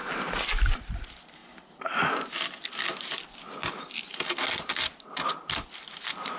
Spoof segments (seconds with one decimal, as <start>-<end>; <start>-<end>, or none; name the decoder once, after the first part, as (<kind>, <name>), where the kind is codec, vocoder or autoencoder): none